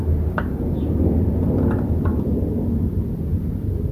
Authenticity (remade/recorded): recorded